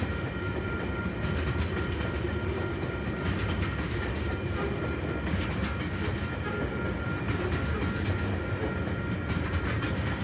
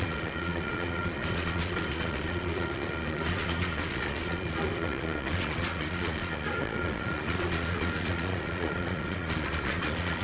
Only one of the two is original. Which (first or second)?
first